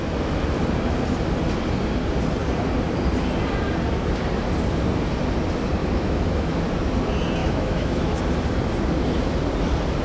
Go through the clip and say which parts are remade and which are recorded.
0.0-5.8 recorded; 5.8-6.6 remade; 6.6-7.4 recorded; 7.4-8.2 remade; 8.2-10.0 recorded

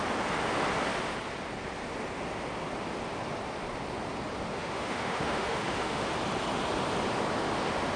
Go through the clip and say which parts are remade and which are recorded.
0.0-4.5 recorded; 4.5-6.1 remade; 6.1-8.0 recorded

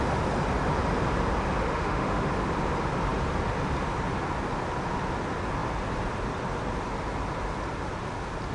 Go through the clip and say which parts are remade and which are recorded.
0.0-1.7 recorded; 1.7-2.3 remade; 2.3-8.5 recorded

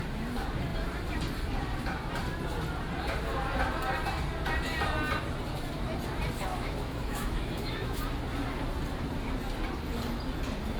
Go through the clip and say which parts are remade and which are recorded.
0.0-6.5 recorded; 6.5-8.0 remade; 8.0-10.8 recorded

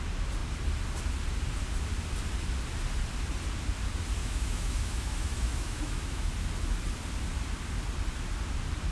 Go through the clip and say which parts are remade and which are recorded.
0.0-4.2 recorded; 4.2-6.3 remade; 6.3-8.9 recorded

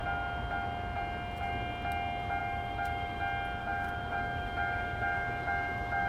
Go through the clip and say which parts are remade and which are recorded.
0.0-2.4 recorded; 2.4-3.2 remade; 3.2-3.6 recorded; 3.6-6.1 remade

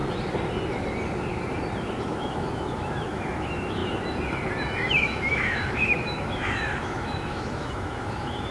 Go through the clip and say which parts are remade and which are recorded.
0.0-2.0 recorded; 2.0-3.8 remade; 3.8-4.9 recorded; 4.9-8.5 remade